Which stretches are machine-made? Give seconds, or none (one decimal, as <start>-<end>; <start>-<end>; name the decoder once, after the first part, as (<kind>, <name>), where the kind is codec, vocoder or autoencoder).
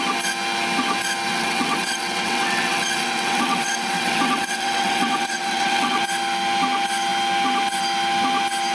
1.3-6.0 (vocoder, WaveNeXt)